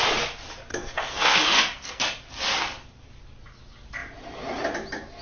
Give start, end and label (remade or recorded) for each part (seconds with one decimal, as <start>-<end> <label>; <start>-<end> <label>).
0.0-0.7 recorded; 0.7-2.0 remade; 2.0-5.2 recorded